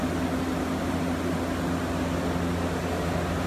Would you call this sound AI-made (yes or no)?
no